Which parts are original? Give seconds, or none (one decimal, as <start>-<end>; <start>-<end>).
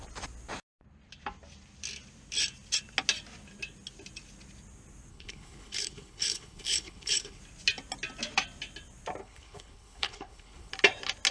0.0-5.1; 7.4-9.2; 10.7-11.3